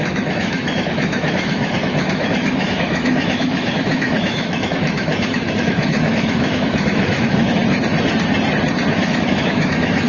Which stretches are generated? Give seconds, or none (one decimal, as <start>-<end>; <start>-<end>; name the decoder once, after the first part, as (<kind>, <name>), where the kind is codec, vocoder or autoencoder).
0.0-7.6 (autoencoder, DAC-VAE); 8.9-10.1